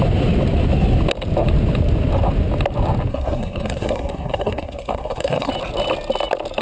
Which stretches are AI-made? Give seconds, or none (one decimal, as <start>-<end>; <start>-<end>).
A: 3.1-5.5